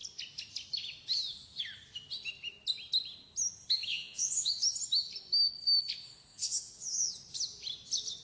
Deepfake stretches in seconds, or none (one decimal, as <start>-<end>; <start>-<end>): 3.9-4.5; 6.3-7.1